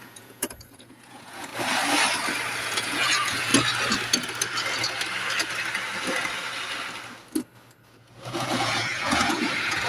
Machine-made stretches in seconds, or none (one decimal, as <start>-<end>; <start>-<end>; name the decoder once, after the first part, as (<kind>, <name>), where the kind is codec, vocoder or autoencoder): 0.0-1.5 (vocoder, Vocos); 2.6-3.5; 7.9-9.9